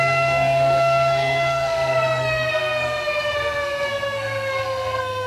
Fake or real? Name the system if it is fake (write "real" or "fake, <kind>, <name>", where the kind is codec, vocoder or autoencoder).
fake, codec, SNAC